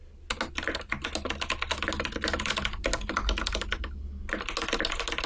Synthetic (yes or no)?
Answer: no